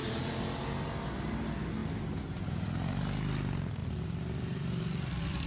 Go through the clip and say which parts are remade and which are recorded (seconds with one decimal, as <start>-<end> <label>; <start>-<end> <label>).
0.0-0.6 remade; 0.6-3.8 recorded; 3.8-5.5 remade

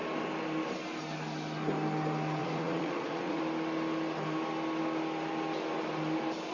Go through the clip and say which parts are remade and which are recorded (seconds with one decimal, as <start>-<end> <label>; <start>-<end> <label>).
0.0-2.4 recorded; 2.4-3.4 remade; 3.4-6.5 recorded

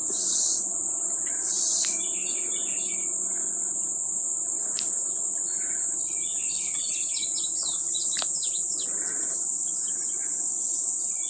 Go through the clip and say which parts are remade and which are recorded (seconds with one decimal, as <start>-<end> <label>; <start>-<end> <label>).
0.0-0.6 remade; 0.6-11.3 recorded